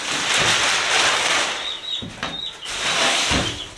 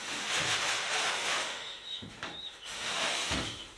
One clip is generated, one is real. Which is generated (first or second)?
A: second